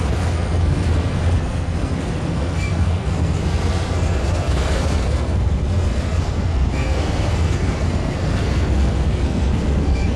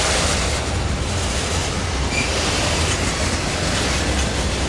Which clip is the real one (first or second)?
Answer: second